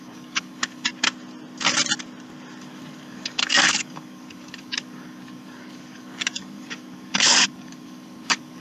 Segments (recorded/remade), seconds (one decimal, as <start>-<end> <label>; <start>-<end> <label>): 0.0-0.9 remade; 0.9-2.6 recorded; 2.6-8.6 remade